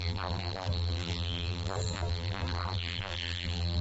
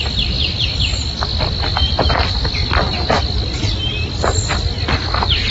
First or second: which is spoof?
first